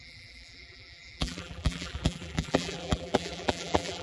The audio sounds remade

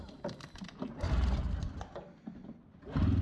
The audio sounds recorded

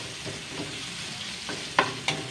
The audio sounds recorded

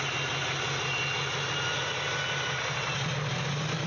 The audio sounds recorded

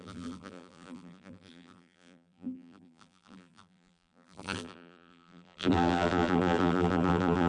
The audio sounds remade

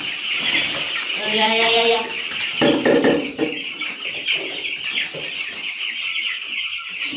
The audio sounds remade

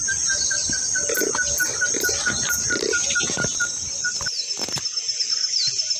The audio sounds recorded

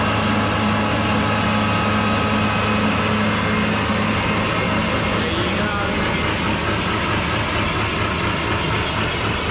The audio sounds recorded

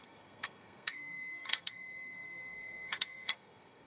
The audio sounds remade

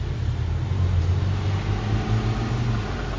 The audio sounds recorded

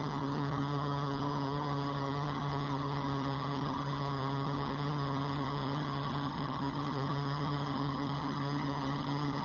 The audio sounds remade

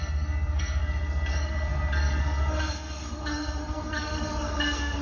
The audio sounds remade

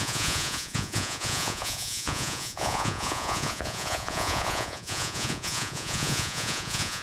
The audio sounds remade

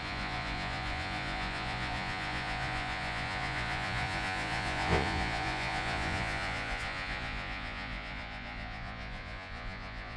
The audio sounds remade